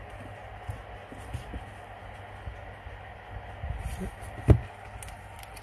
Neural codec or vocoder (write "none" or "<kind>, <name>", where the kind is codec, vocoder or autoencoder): none